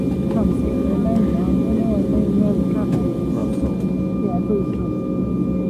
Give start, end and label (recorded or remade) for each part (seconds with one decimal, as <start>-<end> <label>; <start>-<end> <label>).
0.0-5.7 recorded